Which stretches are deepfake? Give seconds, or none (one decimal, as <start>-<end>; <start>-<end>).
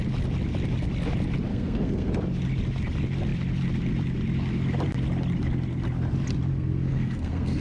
1.5-2.1; 6.5-7.6